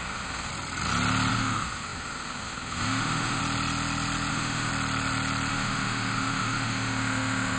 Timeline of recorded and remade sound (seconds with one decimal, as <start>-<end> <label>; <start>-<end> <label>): 0.0-0.5 remade; 0.5-1.3 recorded; 1.3-3.4 remade; 3.4-4.3 recorded; 4.3-4.7 remade; 4.7-5.5 recorded; 5.5-7.6 remade